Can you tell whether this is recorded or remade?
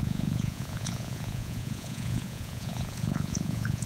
remade